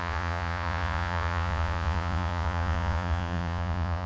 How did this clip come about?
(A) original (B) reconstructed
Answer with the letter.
B